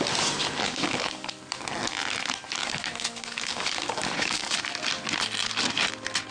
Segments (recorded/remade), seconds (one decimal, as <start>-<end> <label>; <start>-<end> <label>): 0.0-0.6 recorded; 0.6-1.3 remade; 1.3-2.6 recorded; 2.6-4.6 remade; 4.6-6.3 recorded